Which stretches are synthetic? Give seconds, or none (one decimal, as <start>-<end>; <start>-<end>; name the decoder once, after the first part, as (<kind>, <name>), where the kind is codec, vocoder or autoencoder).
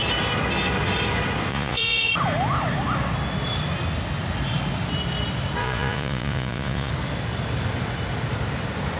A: 1.5-2.1 (vocoder, Vocos); 5.6-6.9